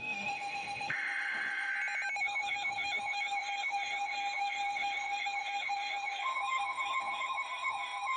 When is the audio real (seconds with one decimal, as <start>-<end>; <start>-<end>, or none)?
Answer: 1.7-2.2